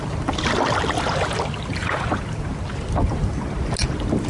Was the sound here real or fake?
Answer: real